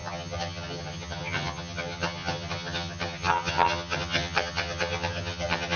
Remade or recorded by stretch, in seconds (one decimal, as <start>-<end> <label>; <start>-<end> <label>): 0.0-5.8 remade